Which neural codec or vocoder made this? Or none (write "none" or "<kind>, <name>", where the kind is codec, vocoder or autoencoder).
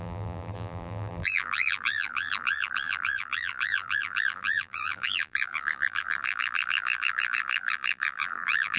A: vocoder, BigVGAN v2